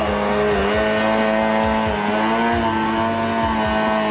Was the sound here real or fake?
real